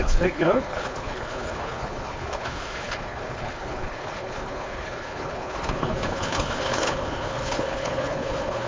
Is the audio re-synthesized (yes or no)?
yes